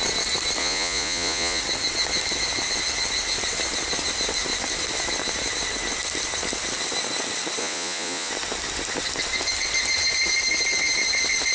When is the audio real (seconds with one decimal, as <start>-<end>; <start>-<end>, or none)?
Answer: 0.0-0.6; 1.6-7.6; 8.3-11.5